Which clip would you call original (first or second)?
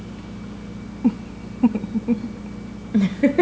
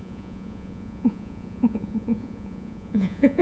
first